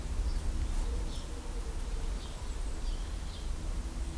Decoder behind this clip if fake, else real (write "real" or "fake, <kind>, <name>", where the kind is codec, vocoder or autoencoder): real